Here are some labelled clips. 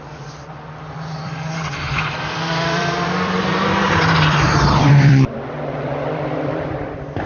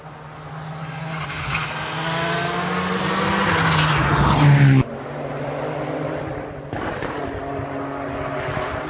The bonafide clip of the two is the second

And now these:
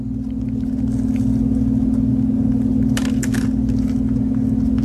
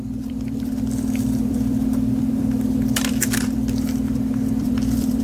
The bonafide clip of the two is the first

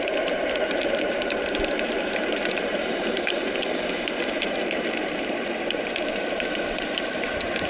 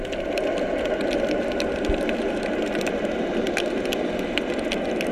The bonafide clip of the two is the second